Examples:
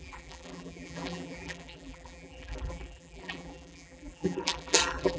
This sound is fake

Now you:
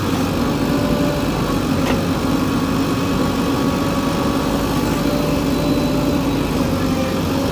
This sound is real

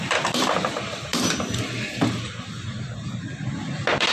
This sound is fake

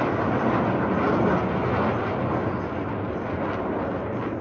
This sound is real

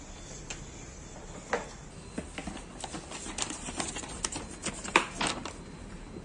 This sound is real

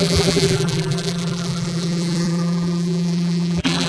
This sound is fake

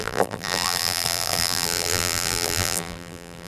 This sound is fake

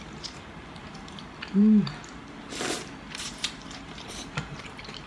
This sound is fake